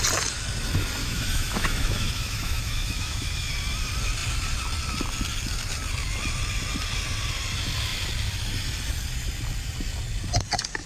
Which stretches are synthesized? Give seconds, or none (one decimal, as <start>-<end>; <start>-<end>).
1.0-3.5

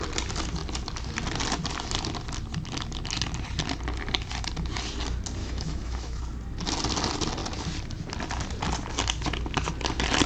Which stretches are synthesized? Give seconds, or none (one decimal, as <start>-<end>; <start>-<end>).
5.4-6.2

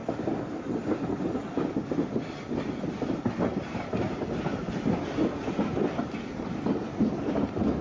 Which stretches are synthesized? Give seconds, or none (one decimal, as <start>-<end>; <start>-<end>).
none

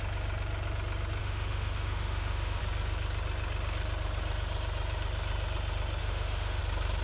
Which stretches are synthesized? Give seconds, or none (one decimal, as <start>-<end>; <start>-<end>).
1.2-2.6; 6.0-6.6